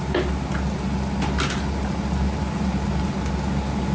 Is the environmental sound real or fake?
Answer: real